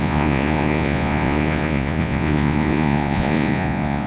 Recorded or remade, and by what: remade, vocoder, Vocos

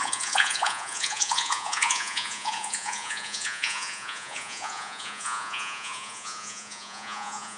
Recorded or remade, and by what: remade, vocoder, Vocos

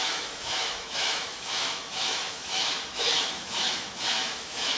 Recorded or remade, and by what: remade, autoencoder, DAC-VAE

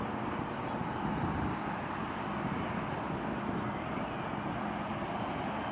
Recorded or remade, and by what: recorded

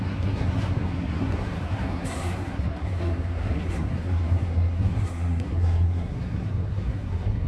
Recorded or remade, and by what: remade, codec, SNAC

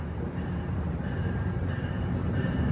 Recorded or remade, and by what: remade, vocoder, BigVGAN v2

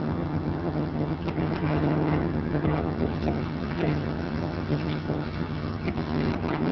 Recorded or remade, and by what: remade, vocoder, HiFi-GAN